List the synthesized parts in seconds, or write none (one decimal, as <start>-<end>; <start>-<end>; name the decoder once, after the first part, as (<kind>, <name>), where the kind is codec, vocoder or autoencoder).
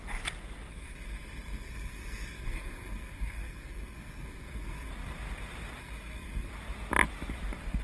0.7-4.9 (codec, SNAC); 5.8-6.5